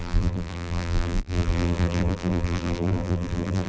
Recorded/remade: remade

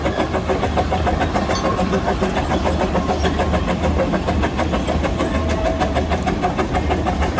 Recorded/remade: recorded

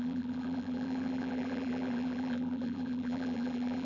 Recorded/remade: remade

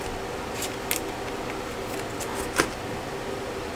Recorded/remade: recorded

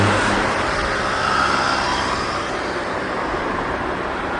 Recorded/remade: remade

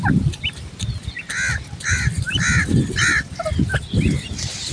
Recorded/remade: remade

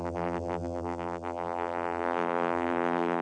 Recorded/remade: remade